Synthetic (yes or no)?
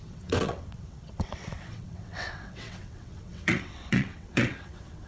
yes